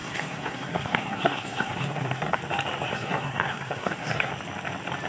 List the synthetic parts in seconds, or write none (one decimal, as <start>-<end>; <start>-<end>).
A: 0.0-2.4; 2.9-4.3